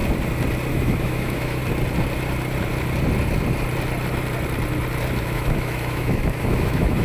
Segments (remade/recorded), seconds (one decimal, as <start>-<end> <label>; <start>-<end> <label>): 0.0-0.7 recorded; 0.7-1.6 remade; 1.6-5.2 recorded; 5.2-7.0 remade